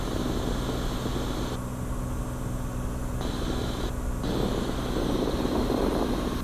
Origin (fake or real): real